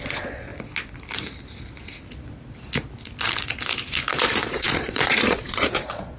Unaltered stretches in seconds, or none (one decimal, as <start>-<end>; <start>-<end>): 0.5-4.2